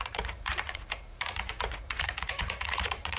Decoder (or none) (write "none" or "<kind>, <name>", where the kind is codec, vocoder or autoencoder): vocoder, Vocos